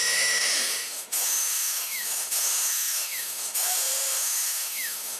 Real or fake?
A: fake